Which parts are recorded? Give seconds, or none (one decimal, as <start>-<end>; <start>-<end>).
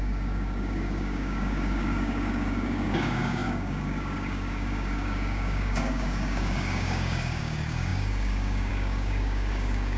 none